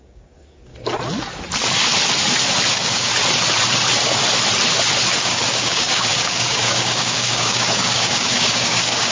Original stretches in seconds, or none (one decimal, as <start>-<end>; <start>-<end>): 0.7-2.7; 3.1-5.2